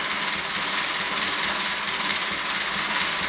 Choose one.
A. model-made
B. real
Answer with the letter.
B